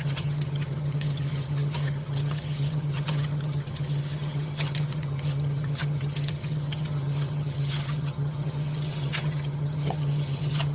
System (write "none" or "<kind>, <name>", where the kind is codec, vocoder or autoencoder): vocoder, HiFi-GAN